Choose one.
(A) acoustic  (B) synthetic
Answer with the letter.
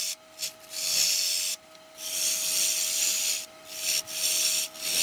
A